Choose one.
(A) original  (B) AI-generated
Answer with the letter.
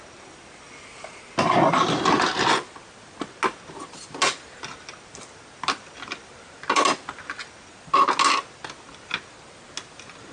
A